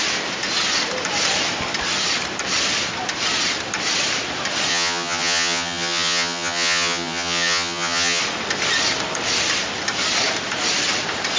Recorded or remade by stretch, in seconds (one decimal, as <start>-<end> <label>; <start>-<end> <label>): 0.0-4.7 recorded; 4.7-8.2 remade; 8.2-11.4 recorded